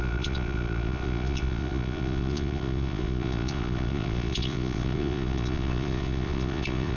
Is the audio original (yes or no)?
no